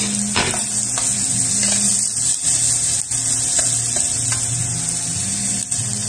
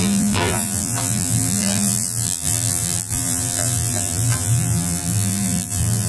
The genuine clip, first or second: first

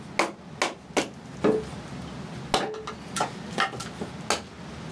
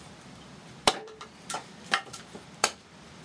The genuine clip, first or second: first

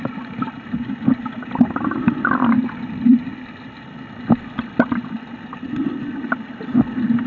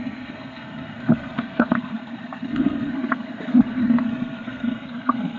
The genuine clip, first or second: first